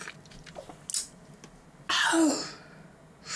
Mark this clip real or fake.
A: real